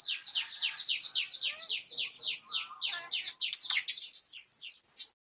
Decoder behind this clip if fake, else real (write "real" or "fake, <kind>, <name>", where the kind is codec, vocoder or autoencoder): real